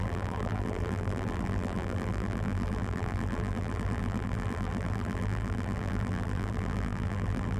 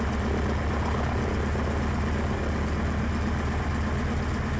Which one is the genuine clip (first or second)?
second